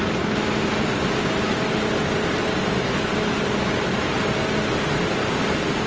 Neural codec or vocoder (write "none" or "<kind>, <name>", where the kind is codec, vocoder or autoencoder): none